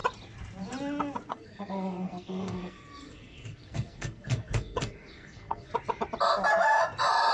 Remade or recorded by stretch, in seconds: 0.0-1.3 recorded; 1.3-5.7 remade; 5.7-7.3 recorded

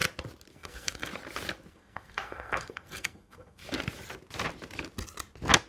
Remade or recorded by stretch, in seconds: 0.0-0.5 recorded; 0.5-1.1 remade; 1.1-1.7 recorded; 1.7-3.6 remade; 3.6-5.7 recorded

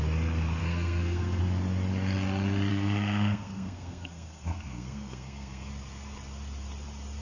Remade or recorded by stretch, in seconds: 0.0-0.6 recorded; 0.6-1.4 remade; 1.4-2.7 recorded; 2.7-5.7 remade; 5.7-7.2 recorded

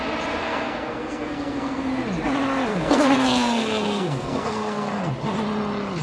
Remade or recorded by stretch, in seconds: 0.0-0.4 recorded; 0.4-1.9 remade; 1.9-2.7 recorded; 2.7-5.1 remade; 5.1-6.0 recorded

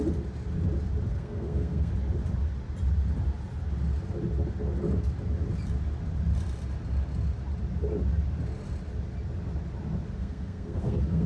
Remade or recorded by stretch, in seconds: 0.0-1.1 recorded; 1.1-1.9 remade; 1.9-10.2 recorded; 10.2-11.3 remade

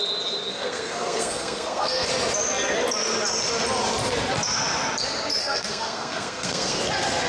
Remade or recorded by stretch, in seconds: 0.0-0.5 recorded; 0.5-2.1 remade; 2.1-5.4 recorded; 5.4-6.8 remade; 6.8-7.3 recorded

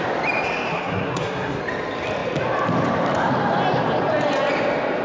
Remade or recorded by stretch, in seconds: 0.0-0.7 recorded; 0.7-1.6 remade; 1.6-5.0 recorded

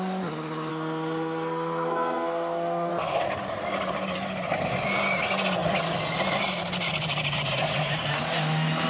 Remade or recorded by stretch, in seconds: 0.0-0.7 recorded; 0.7-2.9 remade; 2.9-8.9 recorded